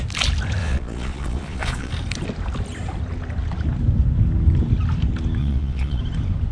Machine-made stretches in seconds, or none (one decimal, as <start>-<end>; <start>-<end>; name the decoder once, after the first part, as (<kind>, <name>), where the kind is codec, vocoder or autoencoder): 0.6-1.9 (vocoder, Vocos); 5.4-6.0